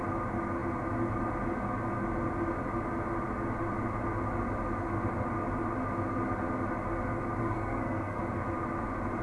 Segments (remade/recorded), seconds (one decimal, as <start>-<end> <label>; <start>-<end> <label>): 0.0-7.4 recorded; 7.4-8.2 remade; 8.2-9.2 recorded